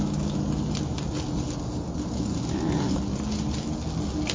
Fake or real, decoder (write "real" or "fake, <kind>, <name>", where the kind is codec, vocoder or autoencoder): real